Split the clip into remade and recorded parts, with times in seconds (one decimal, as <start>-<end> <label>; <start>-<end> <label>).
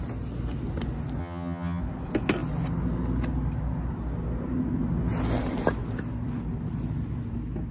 0.0-1.2 recorded; 1.2-1.8 remade; 1.8-7.7 recorded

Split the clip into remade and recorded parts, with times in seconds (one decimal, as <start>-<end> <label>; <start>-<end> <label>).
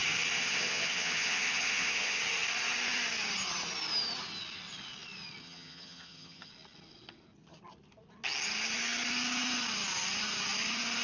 0.0-0.4 recorded; 0.4-2.2 remade; 2.2-5.4 recorded; 5.4-6.5 remade; 6.5-11.0 recorded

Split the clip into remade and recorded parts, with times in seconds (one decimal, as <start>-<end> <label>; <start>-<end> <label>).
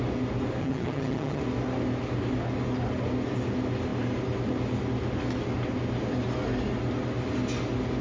0.0-0.6 recorded; 0.6-1.4 remade; 1.4-8.0 recorded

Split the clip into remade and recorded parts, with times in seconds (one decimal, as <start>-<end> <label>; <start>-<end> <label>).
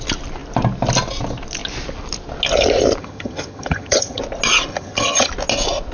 0.0-3.0 recorded; 3.0-4.2 remade; 4.2-4.7 recorded; 4.7-5.3 remade; 5.3-5.9 recorded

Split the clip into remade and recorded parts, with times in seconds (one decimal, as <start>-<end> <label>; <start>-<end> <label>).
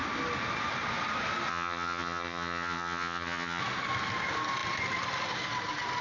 0.0-1.5 recorded; 1.5-3.6 remade; 3.6-6.0 recorded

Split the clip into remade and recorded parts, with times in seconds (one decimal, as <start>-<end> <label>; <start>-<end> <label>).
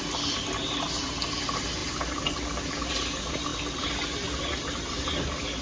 0.0-5.6 recorded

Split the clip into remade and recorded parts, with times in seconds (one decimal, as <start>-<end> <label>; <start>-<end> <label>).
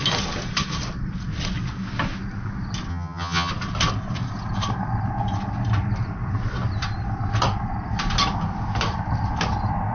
0.0-2.9 recorded; 2.9-3.5 remade; 3.5-9.9 recorded